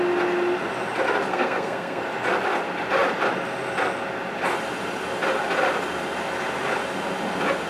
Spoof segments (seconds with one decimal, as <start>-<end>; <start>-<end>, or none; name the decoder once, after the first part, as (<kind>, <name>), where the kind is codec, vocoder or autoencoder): 1.3-2.0 (codec, SNAC)